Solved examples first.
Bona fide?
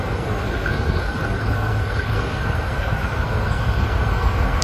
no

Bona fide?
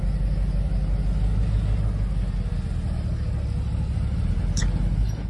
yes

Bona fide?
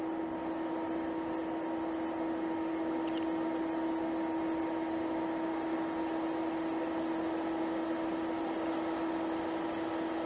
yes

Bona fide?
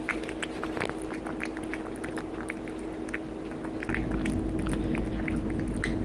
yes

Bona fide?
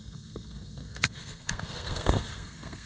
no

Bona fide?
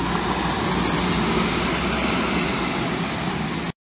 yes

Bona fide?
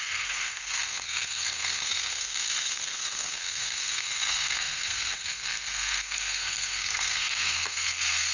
no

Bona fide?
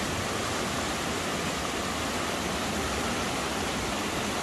yes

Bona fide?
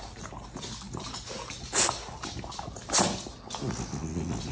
yes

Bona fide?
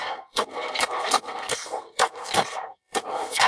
no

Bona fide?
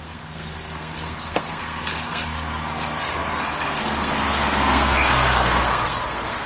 no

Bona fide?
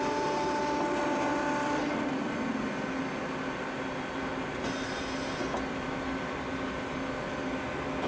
yes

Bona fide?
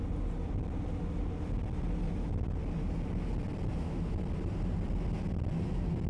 yes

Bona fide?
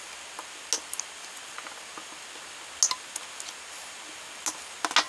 yes